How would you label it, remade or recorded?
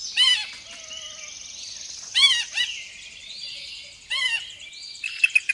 recorded